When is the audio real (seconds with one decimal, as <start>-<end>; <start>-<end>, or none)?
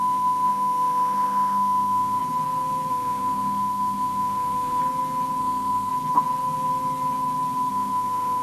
2.2-2.9; 4.8-5.4; 5.9-7.7